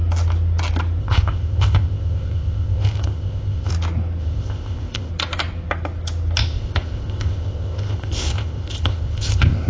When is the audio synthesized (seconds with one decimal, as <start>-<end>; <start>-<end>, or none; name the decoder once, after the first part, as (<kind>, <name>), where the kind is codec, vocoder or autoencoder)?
1.0-3.7 (codec, ZipCodec); 4.2-5.1; 6.4-9.7